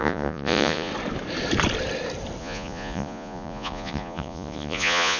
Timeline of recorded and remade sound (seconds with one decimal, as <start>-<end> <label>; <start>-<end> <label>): 0.0-0.9 remade; 0.9-2.4 recorded; 2.4-5.2 remade